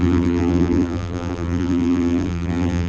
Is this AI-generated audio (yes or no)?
yes